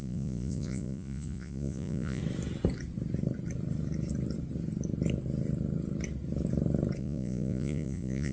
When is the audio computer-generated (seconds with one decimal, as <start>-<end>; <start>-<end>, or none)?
0.0-2.2; 7.0-8.3